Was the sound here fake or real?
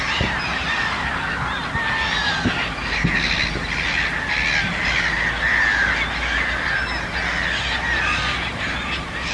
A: real